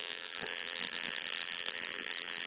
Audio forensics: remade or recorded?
remade